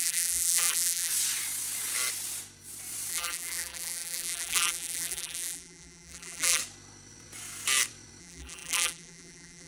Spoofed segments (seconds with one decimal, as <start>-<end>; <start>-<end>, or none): 0.0-1.1; 3.1-6.6; 8.2-9.7